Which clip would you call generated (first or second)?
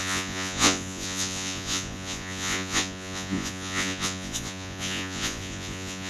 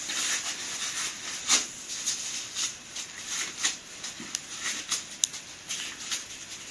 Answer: first